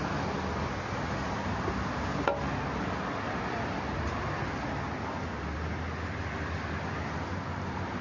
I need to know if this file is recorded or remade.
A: recorded